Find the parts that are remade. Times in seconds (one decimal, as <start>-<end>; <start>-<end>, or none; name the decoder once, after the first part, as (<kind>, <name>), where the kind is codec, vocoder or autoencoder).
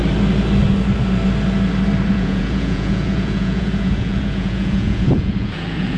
2.1-6.0 (vocoder, Vocos)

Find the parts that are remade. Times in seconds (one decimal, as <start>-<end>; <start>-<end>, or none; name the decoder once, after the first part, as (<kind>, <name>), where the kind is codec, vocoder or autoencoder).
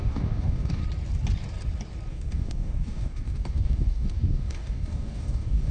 0.0-0.8 (codec, DAC); 2.1-5.7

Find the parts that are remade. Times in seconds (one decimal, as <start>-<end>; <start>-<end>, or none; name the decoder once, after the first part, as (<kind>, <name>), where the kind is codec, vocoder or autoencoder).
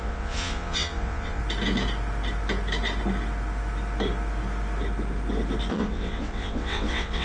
0.0-1.4 (vocoder, WaveNeXt); 5.7-7.2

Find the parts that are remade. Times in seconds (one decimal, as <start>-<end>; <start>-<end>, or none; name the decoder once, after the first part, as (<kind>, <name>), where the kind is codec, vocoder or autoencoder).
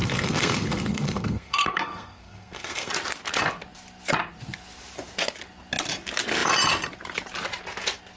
0.0-2.9 (codec, SNAC)